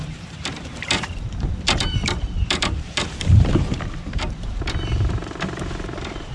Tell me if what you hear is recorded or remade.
remade